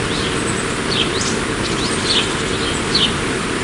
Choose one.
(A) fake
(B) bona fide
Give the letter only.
B